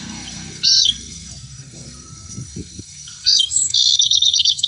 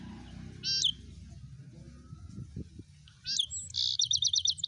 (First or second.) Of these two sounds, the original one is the second